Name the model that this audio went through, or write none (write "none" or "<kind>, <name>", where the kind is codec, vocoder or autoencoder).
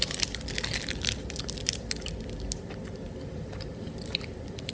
vocoder, BigVGAN v2